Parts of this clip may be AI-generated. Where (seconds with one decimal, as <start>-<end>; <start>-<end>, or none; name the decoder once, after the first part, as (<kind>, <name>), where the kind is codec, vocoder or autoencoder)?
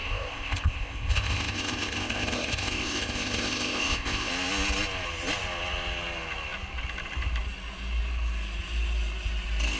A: 0.0-4.3 (codec, ZipCodec)